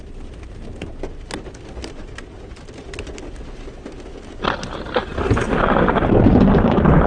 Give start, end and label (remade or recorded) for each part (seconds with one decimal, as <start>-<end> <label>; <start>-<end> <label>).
0.0-7.1 recorded